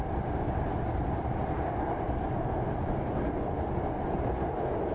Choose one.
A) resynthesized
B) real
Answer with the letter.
B